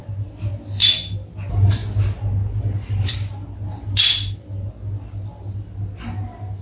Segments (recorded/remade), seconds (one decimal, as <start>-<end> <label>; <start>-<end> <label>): 0.0-6.6 recorded